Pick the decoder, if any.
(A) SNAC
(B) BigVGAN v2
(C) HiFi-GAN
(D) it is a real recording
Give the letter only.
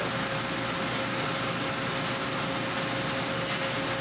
D